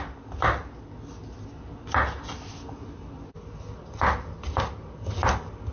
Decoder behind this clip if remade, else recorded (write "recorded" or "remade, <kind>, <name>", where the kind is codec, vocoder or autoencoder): recorded